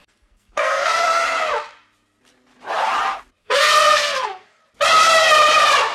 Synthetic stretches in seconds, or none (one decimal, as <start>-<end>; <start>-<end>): 0.0-1.0; 3.4-4.6